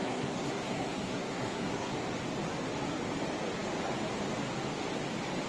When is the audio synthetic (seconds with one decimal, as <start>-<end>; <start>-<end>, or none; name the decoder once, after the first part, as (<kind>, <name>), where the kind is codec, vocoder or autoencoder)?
0.0-1.9 (codec, SNAC)